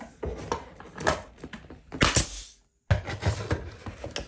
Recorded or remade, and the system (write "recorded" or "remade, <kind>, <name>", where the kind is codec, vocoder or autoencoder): recorded